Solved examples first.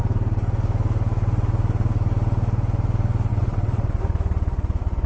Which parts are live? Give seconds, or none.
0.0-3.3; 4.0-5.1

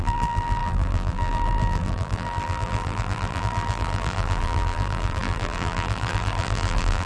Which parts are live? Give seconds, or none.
none

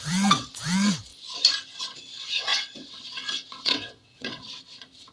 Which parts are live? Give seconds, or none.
1.1-1.8

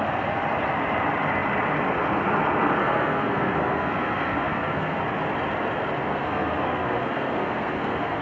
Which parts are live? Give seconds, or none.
0.0-2.8; 5.0-6.1

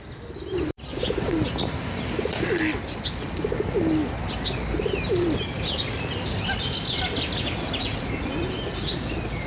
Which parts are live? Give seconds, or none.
none

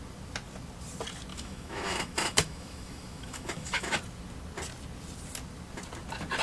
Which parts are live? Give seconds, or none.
0.0-1.3; 4.0-6.4

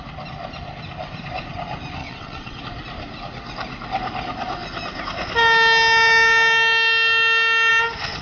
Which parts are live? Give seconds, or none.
0.0-2.0; 2.6-8.2

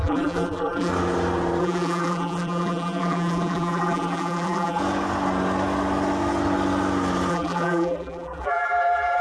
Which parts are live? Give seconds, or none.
0.9-1.6; 4.8-7.3